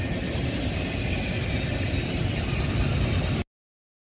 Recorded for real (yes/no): yes